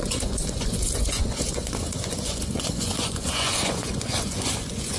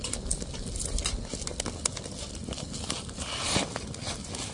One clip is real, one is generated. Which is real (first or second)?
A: second